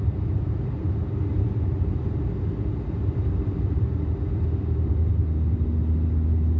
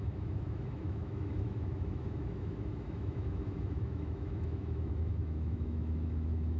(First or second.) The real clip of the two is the first